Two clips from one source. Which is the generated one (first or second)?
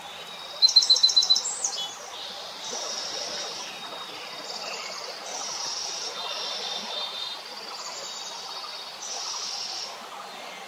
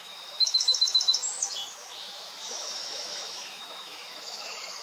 second